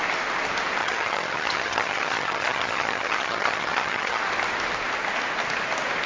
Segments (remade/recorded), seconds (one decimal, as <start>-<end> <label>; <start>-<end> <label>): 0.0-0.8 recorded; 0.8-4.2 remade; 4.2-6.1 recorded

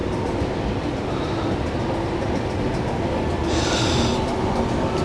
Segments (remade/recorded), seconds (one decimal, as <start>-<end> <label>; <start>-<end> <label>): 0.0-5.0 recorded

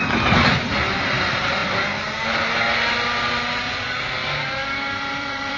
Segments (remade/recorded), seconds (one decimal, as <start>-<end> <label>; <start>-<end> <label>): 0.0-1.6 remade; 1.6-5.0 recorded; 5.0-5.6 remade

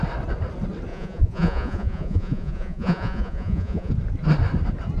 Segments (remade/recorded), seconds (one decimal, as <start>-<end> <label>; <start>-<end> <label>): 0.0-0.9 recorded; 0.9-3.9 remade; 3.9-5.0 recorded